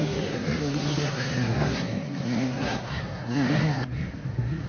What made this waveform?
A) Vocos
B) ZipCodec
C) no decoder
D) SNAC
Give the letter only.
D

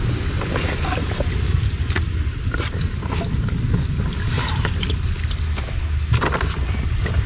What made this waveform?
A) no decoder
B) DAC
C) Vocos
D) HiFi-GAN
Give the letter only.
A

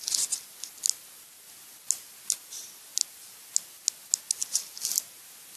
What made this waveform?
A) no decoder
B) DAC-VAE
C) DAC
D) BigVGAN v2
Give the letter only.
A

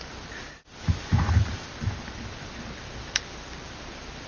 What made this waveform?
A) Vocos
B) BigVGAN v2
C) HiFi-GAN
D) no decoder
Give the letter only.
D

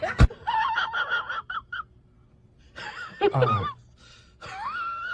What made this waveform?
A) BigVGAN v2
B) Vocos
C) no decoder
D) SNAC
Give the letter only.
C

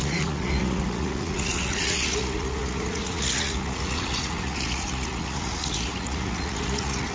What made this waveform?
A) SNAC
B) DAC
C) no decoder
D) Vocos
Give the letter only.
D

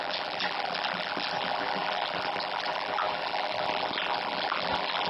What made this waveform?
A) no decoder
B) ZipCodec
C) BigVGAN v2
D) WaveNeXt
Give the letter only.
C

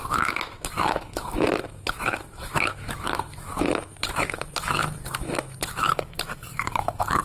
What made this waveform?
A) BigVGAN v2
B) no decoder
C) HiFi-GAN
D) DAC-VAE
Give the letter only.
D